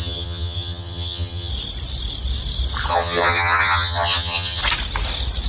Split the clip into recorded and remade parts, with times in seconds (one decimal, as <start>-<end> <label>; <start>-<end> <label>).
0.0-1.5 remade; 1.5-2.9 recorded; 2.9-4.6 remade; 4.6-5.5 recorded